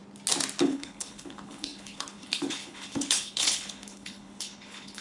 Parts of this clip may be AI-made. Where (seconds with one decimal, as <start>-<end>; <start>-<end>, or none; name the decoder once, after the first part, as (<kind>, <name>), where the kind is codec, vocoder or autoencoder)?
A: 0.6-5.0 (codec, HILCodec)